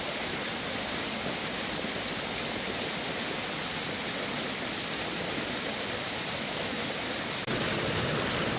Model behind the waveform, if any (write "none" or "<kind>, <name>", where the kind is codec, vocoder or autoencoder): none